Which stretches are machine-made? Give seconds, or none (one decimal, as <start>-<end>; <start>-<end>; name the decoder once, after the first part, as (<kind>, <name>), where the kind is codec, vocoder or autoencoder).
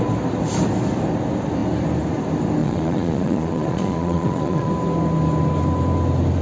2.6-4.7 (vocoder, Vocos)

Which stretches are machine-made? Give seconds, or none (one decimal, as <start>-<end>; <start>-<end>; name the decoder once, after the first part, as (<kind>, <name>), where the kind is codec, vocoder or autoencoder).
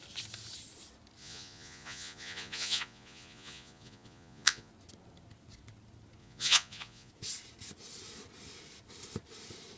1.2-4.7 (vocoder, Vocos); 6.2-7.1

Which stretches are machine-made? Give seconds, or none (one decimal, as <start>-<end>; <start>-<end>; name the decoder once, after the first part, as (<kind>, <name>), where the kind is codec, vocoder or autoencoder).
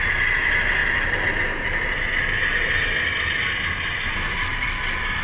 none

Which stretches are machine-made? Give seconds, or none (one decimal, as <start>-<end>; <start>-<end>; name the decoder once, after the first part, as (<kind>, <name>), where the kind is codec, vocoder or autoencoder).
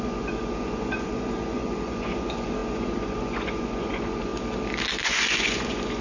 0.0-4.3 (vocoder, Vocos); 5.0-6.0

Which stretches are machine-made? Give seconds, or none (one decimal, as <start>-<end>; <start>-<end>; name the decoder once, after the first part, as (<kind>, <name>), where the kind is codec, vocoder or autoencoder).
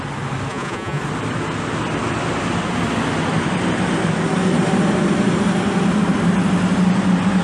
0.5-1.0 (vocoder, Vocos)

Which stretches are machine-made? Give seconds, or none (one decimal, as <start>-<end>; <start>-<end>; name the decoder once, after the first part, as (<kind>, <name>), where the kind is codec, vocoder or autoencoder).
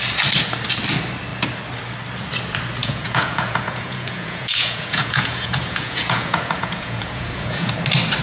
2.8-7.7 (vocoder, Vocos)